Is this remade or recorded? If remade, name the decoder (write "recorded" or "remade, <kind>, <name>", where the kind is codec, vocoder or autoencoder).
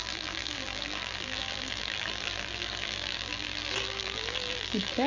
remade, vocoder, BigVGAN v2